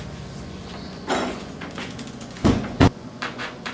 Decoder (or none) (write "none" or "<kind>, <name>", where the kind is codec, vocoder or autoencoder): vocoder, Vocos